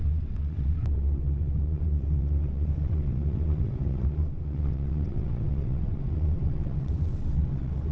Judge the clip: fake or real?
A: fake